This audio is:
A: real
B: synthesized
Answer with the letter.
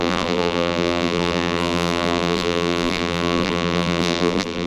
B